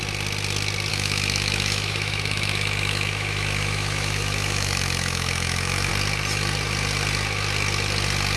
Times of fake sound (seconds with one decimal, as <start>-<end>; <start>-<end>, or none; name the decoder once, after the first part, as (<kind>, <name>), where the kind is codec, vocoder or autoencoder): 0.9-5.9 (autoencoder, DAC-VAE)